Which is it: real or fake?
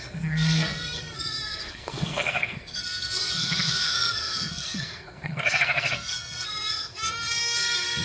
fake